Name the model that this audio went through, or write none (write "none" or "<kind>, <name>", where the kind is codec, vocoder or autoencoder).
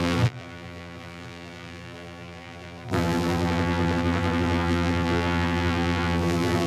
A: vocoder, BigVGAN v2